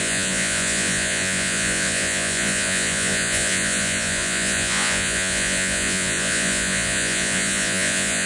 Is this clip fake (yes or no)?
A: yes